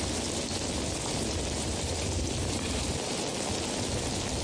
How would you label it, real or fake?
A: real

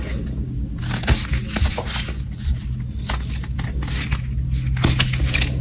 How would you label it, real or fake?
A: real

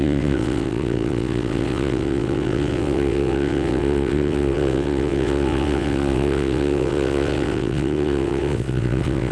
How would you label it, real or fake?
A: fake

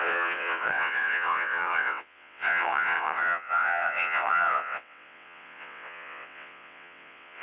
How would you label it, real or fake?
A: fake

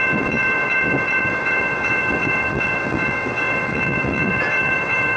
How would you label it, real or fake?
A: fake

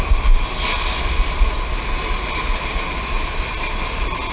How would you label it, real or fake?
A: real